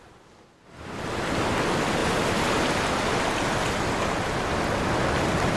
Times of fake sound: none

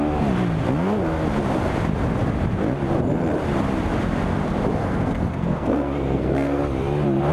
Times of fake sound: 4.8-6.6 (codec, SNAC)

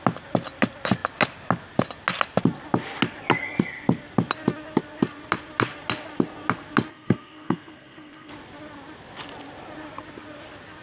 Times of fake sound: 6.9-8.3 (codec, SNAC)

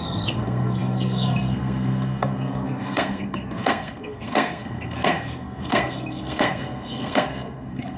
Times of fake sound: 0.0-8.0 (codec, SNAC)

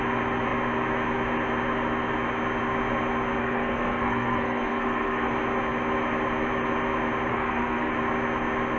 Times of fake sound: 3.4-5.3 (codec, SNAC); 7.3-7.9

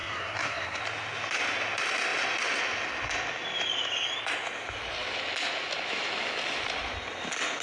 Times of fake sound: 0.0-0.8 (codec, SNAC)

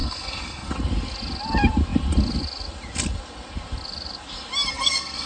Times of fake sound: 0.0-0.7 (codec, SNAC); 4.6-5.3

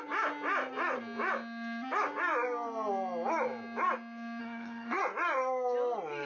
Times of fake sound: 4.4-5.0 (codec, SNAC)